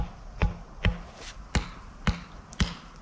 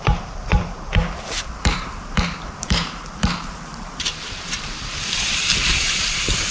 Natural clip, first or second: first